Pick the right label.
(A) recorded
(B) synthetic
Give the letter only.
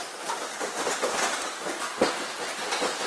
A